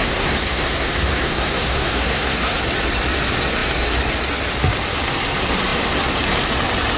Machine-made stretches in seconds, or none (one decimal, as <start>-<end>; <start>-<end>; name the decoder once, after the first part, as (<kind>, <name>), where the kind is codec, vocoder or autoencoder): 0.0-2.6 (codec, SNAC)